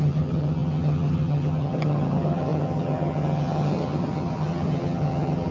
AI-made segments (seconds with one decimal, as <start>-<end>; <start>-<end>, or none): 0.0-5.5